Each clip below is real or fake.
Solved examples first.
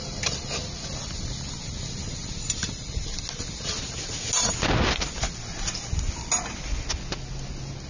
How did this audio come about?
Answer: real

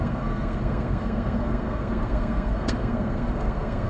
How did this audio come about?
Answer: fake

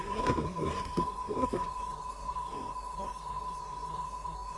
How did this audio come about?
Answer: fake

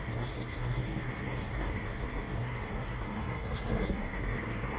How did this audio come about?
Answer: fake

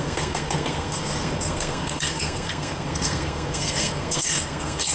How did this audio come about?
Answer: fake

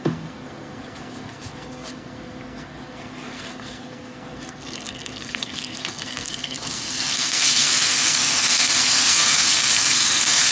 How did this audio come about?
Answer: fake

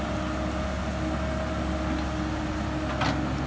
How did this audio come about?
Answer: real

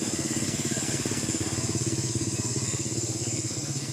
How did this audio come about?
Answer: fake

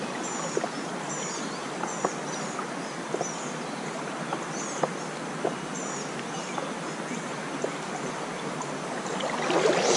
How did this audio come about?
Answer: real